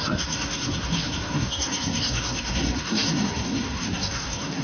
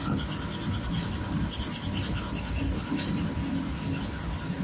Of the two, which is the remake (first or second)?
first